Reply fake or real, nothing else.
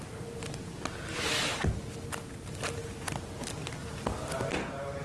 real